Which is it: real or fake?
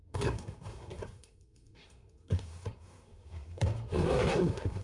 fake